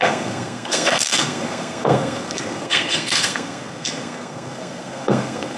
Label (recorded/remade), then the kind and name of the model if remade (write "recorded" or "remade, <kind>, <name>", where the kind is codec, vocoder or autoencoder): remade, codec, SNAC